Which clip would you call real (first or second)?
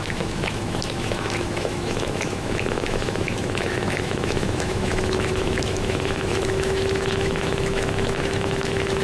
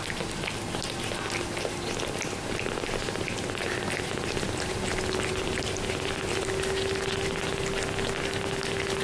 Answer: second